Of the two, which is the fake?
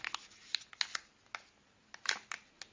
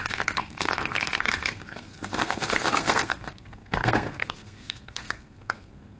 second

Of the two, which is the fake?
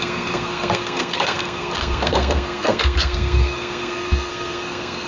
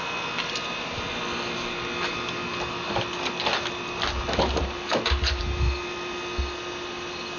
first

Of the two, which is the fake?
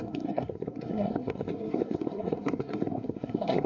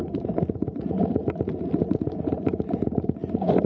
first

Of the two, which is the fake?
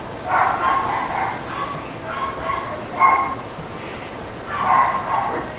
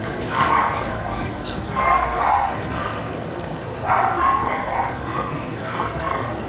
second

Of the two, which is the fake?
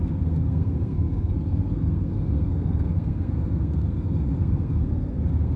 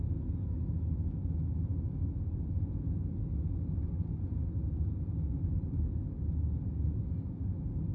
first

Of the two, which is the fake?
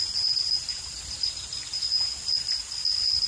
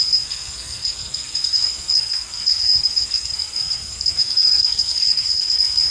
second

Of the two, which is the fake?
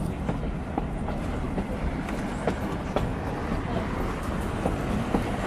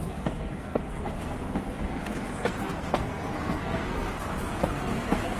second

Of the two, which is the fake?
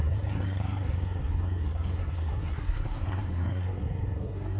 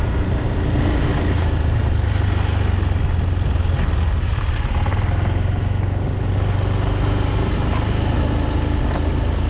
first